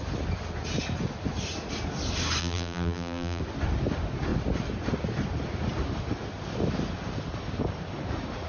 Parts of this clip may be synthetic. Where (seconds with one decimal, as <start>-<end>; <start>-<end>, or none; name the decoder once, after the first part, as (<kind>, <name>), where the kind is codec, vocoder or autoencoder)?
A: 2.4-3.4 (vocoder, BigVGAN v2)